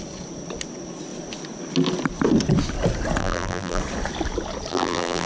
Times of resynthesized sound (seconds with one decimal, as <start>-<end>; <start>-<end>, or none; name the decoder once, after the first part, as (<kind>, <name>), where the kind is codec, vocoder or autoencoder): 3.2-3.8 (vocoder, BigVGAN v2); 4.7-5.3